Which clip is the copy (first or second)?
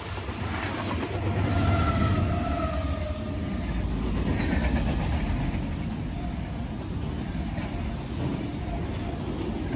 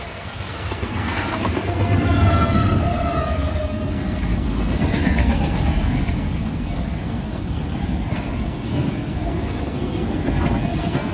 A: second